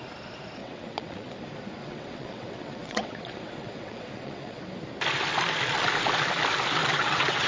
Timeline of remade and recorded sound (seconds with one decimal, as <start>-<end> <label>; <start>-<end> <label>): 0.0-0.6 recorded; 0.6-1.3 remade; 1.3-1.8 recorded; 1.8-4.6 remade; 4.6-6.8 recorded; 6.8-7.5 remade